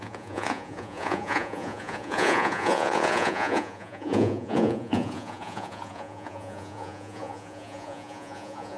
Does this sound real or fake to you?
fake